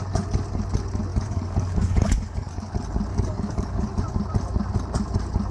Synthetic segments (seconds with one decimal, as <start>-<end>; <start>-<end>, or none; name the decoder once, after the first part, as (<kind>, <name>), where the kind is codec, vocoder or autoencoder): 1.1-2.7 (codec, DAC); 3.1-4.0